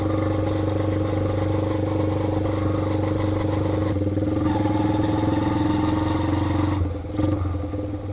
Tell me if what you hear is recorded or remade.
recorded